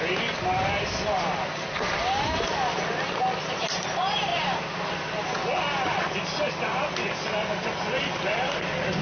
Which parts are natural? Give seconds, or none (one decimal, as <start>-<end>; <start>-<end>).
0.0-9.0